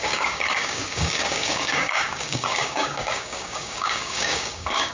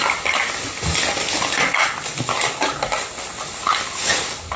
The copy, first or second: first